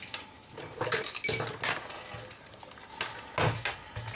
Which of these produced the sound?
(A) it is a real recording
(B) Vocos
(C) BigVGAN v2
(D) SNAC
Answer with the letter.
A